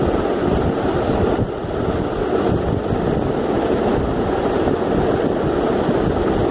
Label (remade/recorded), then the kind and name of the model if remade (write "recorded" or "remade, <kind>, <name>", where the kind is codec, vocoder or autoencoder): recorded